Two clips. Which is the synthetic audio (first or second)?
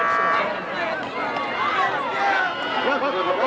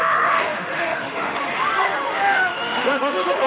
second